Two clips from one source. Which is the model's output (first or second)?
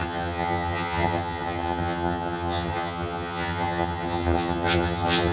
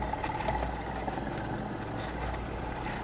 first